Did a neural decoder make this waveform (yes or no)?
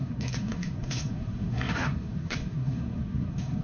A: yes